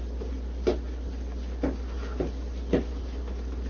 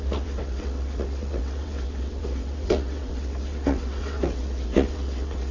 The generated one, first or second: second